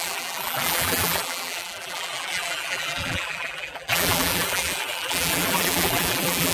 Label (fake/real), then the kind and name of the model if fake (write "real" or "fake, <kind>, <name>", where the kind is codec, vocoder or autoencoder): fake, vocoder, BigVGAN v2